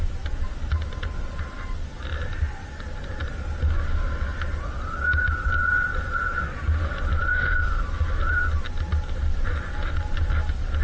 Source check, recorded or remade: recorded